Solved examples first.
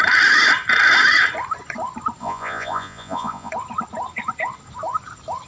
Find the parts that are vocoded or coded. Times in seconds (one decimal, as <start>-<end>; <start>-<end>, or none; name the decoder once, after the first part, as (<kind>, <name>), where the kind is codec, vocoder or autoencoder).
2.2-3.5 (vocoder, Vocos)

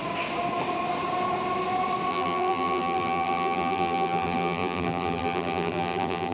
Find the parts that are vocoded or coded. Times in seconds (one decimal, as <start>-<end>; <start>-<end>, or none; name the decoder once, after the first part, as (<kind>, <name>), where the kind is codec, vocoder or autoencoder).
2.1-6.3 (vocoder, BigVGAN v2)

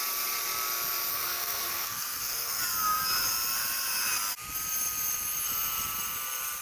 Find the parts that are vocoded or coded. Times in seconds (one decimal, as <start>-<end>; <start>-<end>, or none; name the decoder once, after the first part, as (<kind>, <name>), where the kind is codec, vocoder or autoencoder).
1.1-2.6 (codec, SNAC)

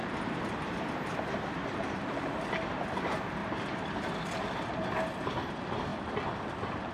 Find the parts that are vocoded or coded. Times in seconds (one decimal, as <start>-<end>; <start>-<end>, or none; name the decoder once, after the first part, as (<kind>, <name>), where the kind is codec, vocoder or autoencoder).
0.0-2.5 (vocoder, BigVGAN v2); 3.4-4.0

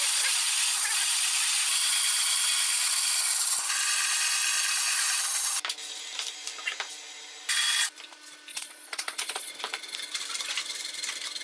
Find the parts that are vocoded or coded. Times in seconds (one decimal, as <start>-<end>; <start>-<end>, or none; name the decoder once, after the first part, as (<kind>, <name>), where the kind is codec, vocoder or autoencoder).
8.5-9.5 (vocoder, Vocos)

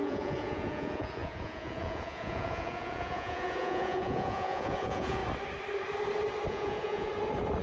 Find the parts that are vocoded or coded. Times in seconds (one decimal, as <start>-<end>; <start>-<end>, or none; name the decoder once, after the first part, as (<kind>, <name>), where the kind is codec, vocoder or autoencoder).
0.0-5.2 (vocoder, Vocos); 6.5-7.1

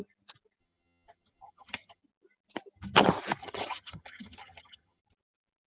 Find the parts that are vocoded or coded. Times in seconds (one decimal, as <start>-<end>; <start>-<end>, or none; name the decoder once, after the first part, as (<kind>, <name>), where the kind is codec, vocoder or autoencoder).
0.6-2.0 (vocoder, HiFi-GAN); 3.4-5.0